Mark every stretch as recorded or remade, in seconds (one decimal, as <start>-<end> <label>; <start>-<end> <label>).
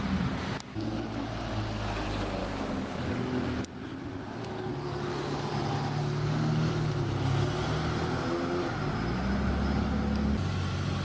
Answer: 0.0-0.7 recorded; 0.7-1.3 remade; 1.3-2.4 recorded; 2.4-3.6 remade; 3.6-4.4 recorded; 4.4-5.5 remade; 5.5-11.0 recorded